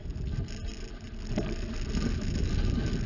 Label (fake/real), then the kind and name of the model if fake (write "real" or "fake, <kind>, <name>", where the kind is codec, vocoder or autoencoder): real